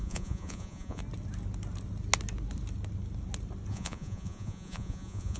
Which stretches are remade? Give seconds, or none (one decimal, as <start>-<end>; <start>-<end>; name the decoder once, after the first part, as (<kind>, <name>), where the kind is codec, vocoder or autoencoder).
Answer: 0.0-1.0 (vocoder, Vocos); 3.7-5.4